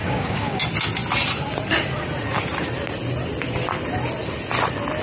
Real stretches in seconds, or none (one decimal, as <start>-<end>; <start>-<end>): 0.6-5.0